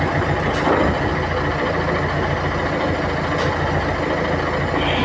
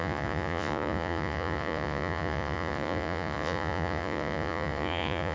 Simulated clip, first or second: second